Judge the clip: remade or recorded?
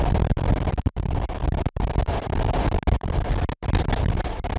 recorded